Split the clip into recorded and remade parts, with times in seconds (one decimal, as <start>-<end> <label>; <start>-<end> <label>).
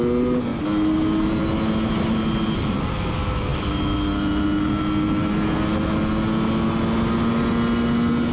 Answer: 0.0-8.3 recorded